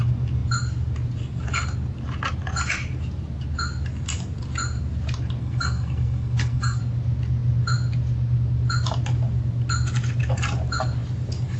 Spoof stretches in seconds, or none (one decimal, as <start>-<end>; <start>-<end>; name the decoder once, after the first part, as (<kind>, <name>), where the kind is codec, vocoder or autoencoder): 5.4-6.8 (codec, SNAC)